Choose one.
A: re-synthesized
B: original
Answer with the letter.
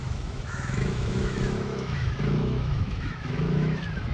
A